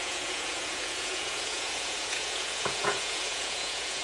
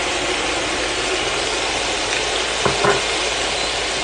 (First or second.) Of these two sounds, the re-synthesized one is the first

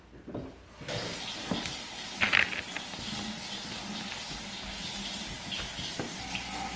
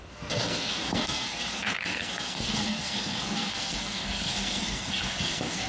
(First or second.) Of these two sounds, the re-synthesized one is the second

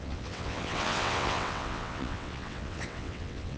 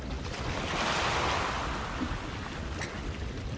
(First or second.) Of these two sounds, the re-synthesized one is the first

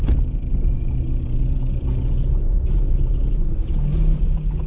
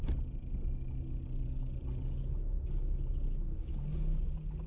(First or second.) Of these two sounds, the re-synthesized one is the first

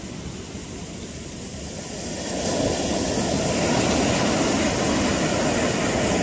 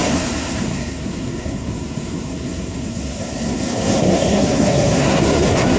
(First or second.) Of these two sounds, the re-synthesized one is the second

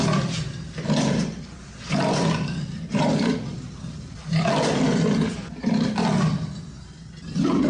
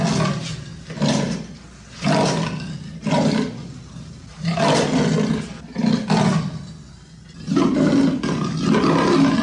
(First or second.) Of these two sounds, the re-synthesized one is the first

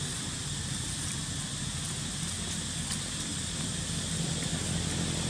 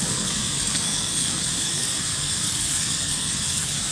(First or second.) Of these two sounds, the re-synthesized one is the second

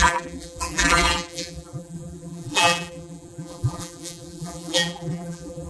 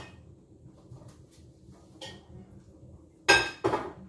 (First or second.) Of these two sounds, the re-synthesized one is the first